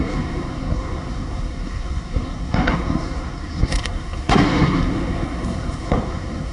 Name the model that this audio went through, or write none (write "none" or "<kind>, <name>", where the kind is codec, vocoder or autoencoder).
codec, SNAC